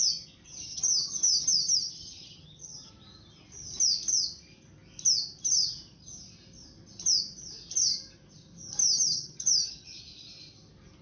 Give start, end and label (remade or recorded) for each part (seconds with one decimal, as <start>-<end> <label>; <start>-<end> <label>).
0.0-0.7 recorded; 0.7-2.9 remade; 2.9-8.8 recorded; 8.8-10.0 remade; 10.0-11.0 recorded